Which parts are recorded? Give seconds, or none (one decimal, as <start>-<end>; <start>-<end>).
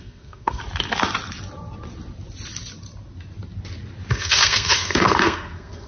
0.6-4.1